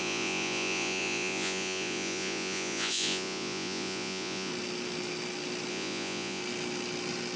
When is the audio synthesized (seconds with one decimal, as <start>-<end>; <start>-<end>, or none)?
0.0-4.5; 5.7-6.4